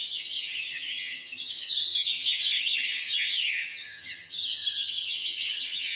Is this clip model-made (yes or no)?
yes